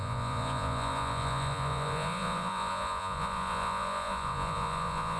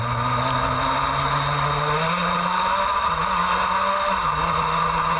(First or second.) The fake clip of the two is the first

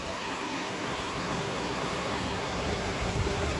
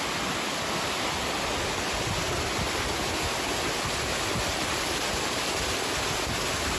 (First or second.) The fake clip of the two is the first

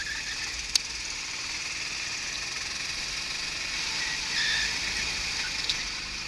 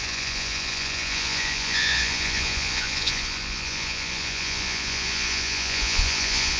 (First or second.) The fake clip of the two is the second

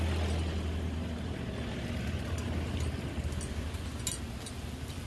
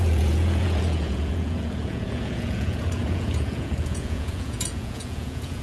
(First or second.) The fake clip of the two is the second